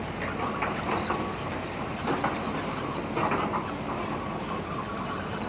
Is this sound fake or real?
real